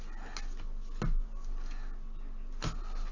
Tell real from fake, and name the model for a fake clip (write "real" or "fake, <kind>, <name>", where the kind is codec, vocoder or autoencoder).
real